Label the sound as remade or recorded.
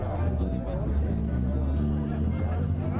recorded